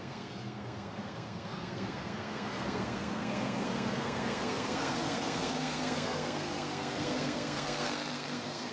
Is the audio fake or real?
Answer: fake